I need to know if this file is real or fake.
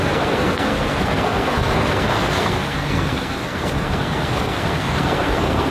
fake